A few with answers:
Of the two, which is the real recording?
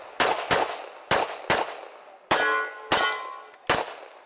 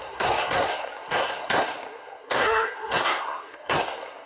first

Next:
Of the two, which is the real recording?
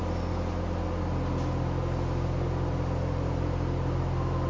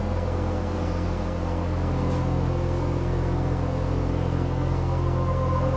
first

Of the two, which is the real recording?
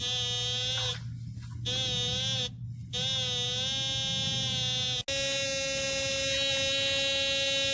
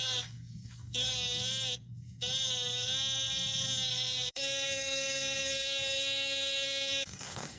first